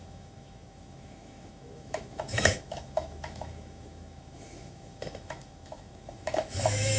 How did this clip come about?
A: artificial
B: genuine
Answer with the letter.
A